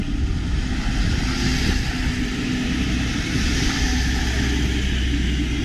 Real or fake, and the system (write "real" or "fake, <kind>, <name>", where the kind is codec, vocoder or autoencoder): real